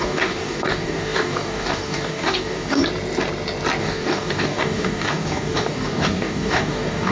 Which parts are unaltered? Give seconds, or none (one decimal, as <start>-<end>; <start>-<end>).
2.8-3.8